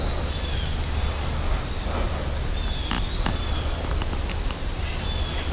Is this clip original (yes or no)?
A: yes